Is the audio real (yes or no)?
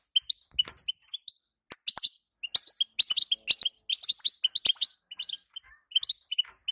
yes